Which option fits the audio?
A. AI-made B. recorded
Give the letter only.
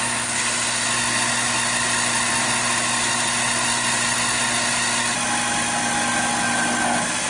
B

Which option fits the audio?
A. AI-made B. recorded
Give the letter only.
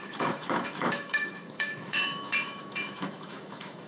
A